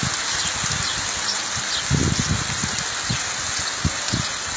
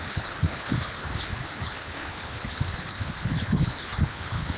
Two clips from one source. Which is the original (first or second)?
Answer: first